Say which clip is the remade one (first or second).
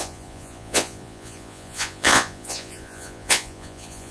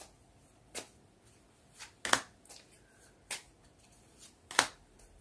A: first